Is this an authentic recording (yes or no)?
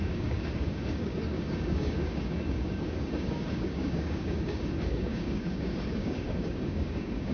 no